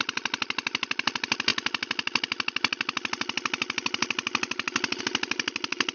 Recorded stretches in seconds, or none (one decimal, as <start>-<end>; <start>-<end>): 0.0-5.9